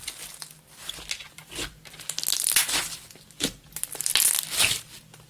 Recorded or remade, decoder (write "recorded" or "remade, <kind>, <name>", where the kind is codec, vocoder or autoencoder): recorded